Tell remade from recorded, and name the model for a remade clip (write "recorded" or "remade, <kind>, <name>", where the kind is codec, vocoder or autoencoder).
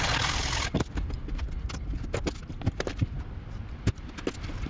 recorded